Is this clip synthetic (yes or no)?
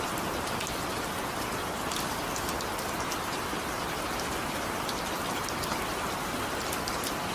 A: no